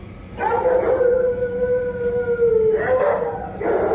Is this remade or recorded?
recorded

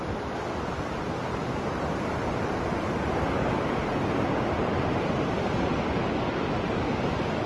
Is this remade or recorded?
recorded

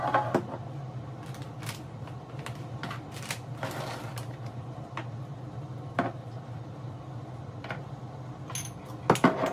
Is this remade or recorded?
recorded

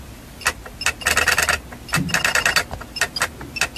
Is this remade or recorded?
recorded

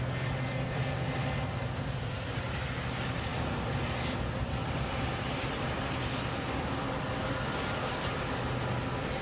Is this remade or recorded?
recorded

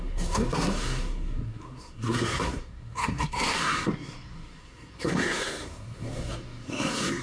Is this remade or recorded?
remade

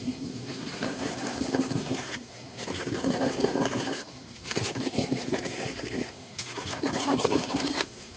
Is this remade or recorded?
remade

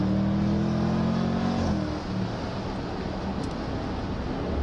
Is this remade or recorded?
recorded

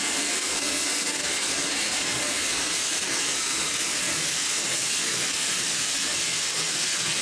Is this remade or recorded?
remade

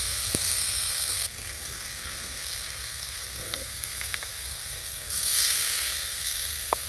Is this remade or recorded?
remade